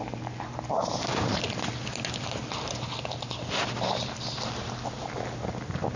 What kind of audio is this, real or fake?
real